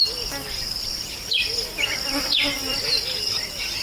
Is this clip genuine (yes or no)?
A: yes